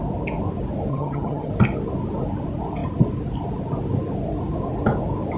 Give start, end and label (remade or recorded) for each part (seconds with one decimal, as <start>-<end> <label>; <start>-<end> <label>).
0.0-0.9 recorded; 0.9-1.5 remade; 1.5-5.4 recorded